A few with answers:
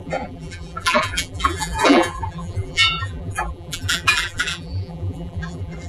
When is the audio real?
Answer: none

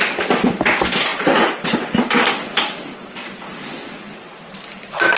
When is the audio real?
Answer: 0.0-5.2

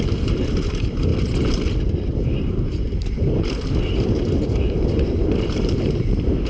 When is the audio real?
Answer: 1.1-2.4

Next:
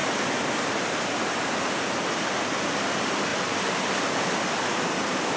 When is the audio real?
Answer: 0.0-5.4

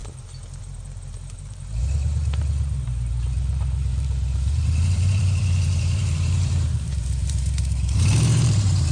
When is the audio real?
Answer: none

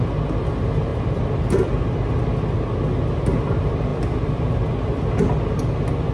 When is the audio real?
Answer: 0.0-0.9; 1.8-3.9; 5.1-6.1